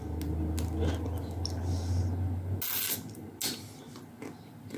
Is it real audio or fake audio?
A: real